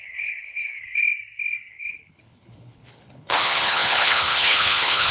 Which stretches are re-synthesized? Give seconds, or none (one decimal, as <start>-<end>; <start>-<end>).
0.0-1.0; 1.7-5.1